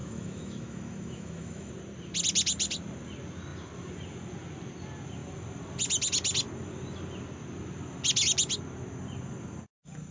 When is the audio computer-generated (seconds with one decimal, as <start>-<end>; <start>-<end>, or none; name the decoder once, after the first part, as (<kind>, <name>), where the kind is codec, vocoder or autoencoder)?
0.0-1.7 (autoencoder, DAC-VAE)